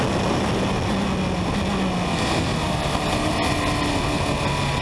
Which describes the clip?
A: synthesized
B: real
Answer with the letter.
B